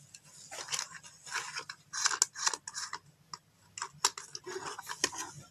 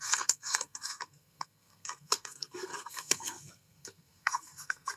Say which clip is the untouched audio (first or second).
first